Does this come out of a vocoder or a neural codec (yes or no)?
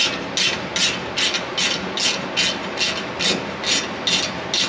no